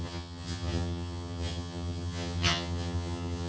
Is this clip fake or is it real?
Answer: fake